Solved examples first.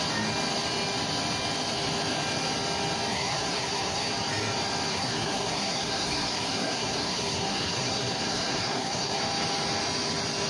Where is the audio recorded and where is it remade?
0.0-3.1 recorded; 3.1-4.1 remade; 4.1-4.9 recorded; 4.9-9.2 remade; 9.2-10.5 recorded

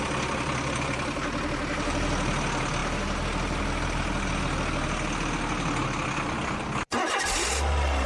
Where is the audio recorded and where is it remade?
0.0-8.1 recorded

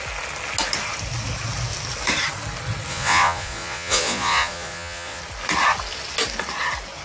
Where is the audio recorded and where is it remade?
0.0-2.9 recorded; 2.9-5.2 remade; 5.2-7.0 recorded